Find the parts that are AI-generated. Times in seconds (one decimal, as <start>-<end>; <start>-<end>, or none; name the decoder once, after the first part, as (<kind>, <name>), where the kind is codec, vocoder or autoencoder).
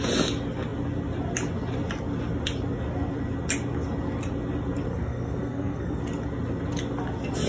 4.9-6.0 (codec, SNAC)